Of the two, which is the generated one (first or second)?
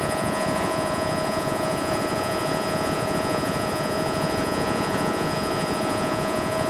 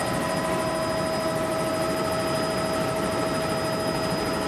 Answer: first